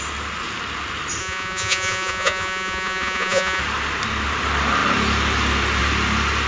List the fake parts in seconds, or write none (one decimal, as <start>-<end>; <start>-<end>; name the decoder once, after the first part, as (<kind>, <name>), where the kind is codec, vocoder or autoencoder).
1.2-3.6 (vocoder, Vocos)

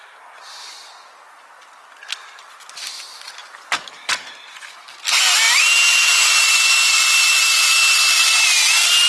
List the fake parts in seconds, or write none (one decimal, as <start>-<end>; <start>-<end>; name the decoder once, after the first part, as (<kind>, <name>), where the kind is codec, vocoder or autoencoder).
none

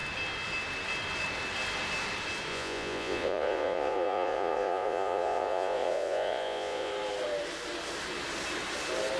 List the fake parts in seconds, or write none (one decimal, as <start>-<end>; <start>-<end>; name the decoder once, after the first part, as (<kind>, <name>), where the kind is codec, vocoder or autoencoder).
2.5-6.9 (vocoder, Vocos)

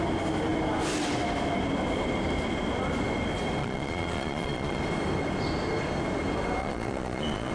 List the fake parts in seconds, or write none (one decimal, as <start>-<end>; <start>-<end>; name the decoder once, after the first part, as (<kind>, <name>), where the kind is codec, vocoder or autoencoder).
3.6-4.8 (vocoder, Vocos); 6.6-7.5

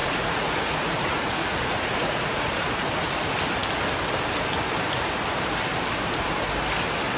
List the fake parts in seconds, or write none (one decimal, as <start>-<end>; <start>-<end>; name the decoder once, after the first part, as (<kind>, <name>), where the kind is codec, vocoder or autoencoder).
0.0-3.2 (vocoder, Vocos)

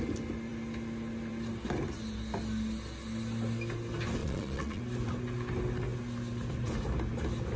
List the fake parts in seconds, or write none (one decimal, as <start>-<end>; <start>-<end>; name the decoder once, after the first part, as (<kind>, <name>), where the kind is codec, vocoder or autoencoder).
4.2-4.8 (vocoder, Vocos)

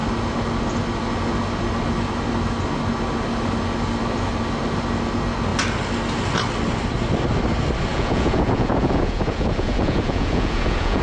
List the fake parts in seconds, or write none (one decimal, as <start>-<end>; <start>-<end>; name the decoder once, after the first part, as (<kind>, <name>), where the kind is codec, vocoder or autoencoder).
7.9-11.0 (vocoder, Vocos)